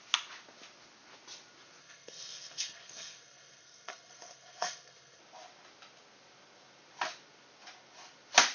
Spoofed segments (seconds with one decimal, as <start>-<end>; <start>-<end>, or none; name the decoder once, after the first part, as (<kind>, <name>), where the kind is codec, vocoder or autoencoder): 1.8-5.2 (codec, SNAC)